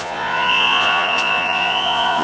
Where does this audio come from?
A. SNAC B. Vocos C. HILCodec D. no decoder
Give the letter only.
B